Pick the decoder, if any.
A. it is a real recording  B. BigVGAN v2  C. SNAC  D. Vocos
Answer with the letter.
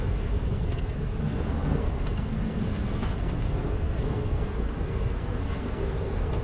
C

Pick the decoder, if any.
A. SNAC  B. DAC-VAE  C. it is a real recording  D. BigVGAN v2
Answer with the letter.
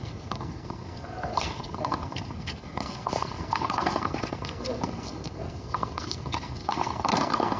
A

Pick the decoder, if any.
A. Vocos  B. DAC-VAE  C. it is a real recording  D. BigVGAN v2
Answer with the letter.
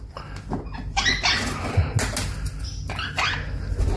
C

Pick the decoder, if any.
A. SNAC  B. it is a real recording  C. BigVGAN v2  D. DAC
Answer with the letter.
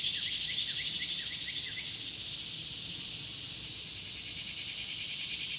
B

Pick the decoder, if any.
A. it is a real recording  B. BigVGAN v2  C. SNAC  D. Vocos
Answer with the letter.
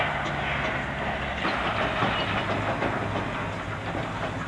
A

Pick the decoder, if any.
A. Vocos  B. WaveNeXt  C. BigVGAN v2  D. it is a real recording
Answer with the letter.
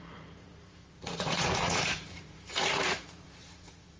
A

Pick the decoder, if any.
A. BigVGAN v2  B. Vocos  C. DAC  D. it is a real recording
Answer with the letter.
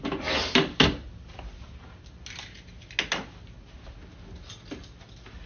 D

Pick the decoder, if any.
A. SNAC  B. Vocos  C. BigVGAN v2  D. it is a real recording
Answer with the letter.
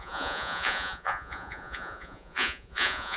B